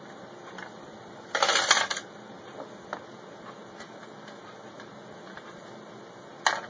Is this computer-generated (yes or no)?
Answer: no